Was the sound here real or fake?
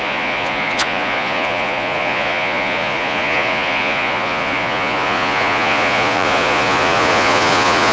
fake